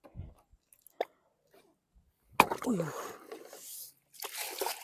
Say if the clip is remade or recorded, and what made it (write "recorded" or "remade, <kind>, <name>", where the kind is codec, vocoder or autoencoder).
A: recorded